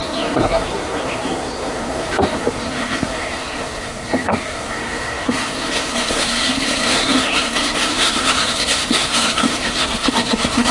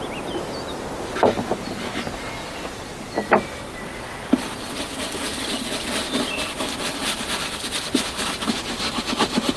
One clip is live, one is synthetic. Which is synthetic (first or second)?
first